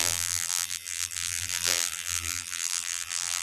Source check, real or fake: fake